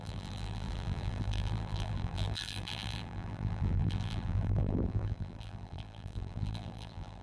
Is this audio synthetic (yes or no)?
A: yes